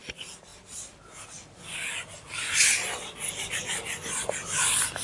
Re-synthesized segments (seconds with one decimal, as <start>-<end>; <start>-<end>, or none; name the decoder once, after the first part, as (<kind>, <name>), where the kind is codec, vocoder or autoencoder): none